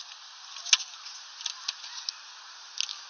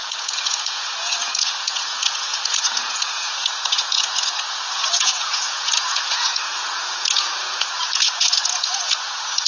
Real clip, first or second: first